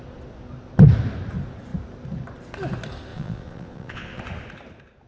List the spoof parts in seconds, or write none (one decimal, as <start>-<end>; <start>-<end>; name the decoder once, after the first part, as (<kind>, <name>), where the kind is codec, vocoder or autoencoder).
3.1-4.2 (vocoder, Vocos)

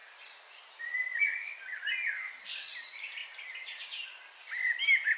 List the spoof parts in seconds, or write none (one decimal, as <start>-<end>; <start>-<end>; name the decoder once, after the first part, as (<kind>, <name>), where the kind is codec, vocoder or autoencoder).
none

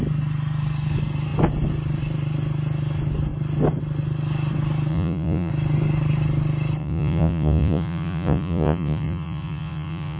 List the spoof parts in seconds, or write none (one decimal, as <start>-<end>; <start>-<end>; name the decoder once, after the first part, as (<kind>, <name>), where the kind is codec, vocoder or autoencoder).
4.9-5.5 (vocoder, Vocos); 6.8-10.2